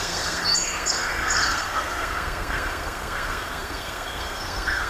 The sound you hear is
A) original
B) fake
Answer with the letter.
B